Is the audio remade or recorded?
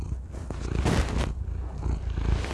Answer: recorded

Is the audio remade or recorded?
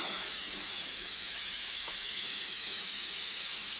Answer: remade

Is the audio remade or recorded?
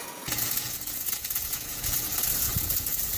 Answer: remade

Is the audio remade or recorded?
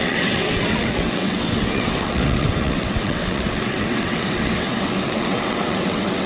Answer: remade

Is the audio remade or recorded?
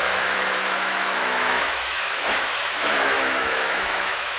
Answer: remade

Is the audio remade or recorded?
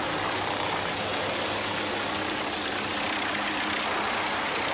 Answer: recorded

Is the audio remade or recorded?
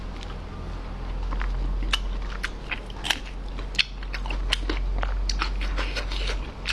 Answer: recorded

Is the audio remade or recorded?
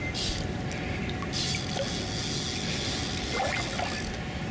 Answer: recorded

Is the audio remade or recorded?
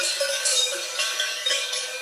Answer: remade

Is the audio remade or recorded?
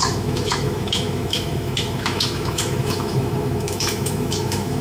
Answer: remade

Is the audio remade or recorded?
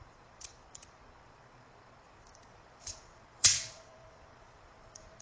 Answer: remade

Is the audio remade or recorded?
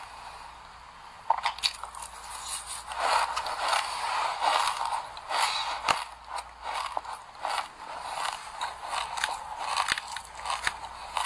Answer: recorded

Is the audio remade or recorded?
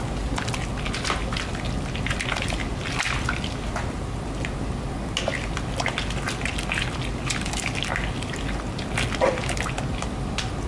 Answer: recorded